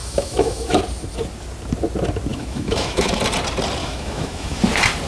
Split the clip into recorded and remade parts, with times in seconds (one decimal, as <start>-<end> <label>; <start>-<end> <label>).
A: 0.0-0.8 remade; 0.8-2.3 recorded; 2.3-3.2 remade; 3.2-3.8 recorded; 3.8-4.6 remade; 4.6-5.1 recorded